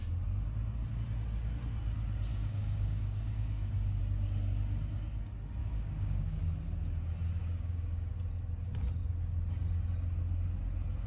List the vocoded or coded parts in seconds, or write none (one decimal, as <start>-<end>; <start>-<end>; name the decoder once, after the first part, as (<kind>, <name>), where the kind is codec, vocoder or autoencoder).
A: 2.3-4.0 (codec, DAC); 5.6-6.4; 7.4-8.1